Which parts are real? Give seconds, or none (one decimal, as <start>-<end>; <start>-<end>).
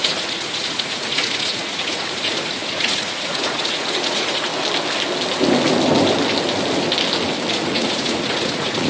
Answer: 4.5-7.5